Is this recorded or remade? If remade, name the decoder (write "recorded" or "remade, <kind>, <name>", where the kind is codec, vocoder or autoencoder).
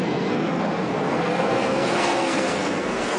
remade, codec, SNAC